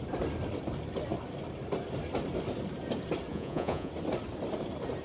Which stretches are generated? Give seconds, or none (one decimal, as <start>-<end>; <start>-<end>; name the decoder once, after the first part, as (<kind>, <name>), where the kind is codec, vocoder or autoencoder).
3.3-3.9 (vocoder, Vocos)